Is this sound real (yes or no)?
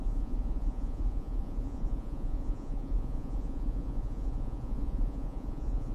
no